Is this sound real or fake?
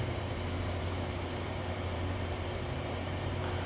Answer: fake